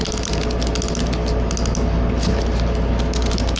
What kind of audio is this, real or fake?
real